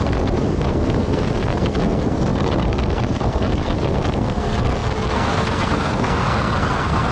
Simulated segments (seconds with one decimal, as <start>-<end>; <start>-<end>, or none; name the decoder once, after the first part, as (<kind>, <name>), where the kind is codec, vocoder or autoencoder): 0.0-7.1 (codec, SNAC)